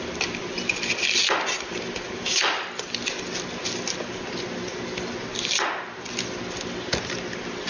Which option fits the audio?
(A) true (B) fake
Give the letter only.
A